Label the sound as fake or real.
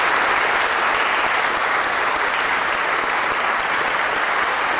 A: real